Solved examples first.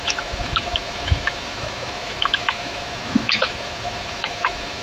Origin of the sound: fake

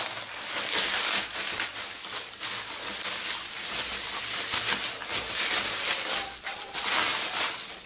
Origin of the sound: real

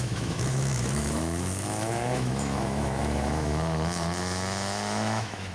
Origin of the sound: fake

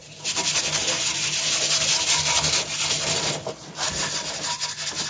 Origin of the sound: real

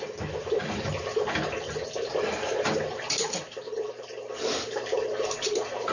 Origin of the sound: real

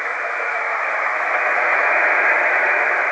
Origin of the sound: fake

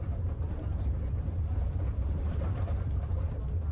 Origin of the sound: real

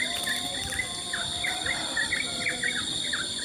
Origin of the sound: real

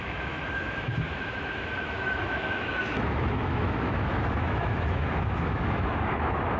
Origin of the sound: fake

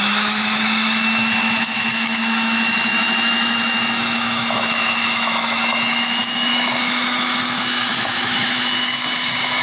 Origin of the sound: fake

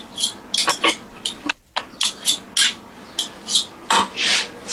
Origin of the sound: real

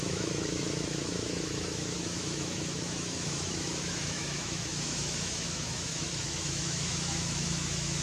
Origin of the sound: fake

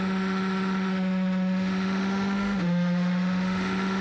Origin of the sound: fake